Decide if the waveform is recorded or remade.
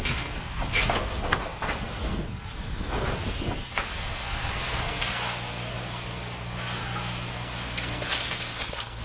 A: remade